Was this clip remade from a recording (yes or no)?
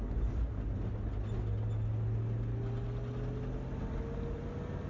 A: no